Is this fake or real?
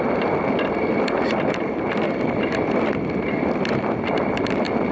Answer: real